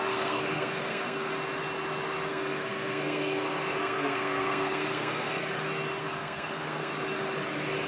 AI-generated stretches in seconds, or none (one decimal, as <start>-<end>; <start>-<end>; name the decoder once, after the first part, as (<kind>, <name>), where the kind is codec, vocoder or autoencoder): 0.0-1.3 (codec, SNAC); 2.3-5.4; 6.0-6.9